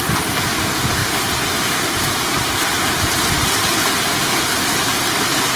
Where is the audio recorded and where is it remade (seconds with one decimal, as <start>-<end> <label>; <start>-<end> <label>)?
0.0-5.6 recorded